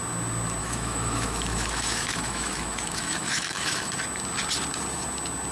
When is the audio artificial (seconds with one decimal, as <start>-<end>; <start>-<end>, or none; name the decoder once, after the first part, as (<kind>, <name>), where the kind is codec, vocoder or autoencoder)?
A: 0.6-3.9 (autoencoder, DAC-VAE)